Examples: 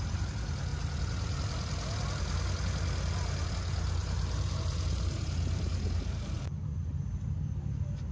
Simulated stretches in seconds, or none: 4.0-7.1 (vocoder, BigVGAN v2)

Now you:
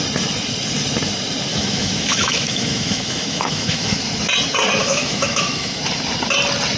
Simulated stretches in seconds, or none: 1.5-4.0 (autoencoder, DAC-VAE); 4.8-5.8

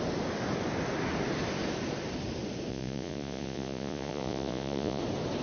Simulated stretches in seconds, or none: 2.7-5.0 (vocoder, Vocos)